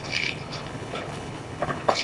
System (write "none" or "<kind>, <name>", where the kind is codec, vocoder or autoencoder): codec, HILCodec